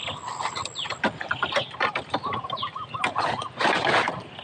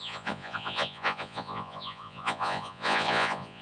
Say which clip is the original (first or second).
first